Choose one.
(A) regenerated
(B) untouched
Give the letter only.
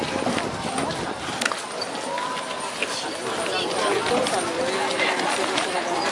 B